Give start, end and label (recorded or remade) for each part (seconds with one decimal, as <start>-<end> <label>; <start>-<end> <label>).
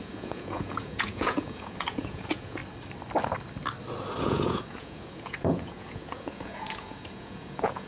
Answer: 0.0-2.6 remade; 2.6-4.2 recorded; 4.2-7.9 remade